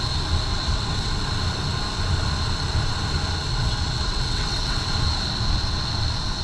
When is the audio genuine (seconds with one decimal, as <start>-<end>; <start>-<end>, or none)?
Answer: 0.0-0.5; 1.1-3.5; 4.9-6.4